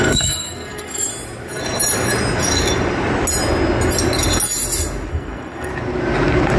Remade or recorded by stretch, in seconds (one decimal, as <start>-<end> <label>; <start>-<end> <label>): 0.0-1.1 remade; 1.1-5.1 recorded; 5.1-5.7 remade; 5.7-6.6 recorded